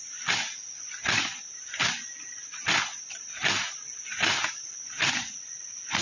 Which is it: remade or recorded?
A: recorded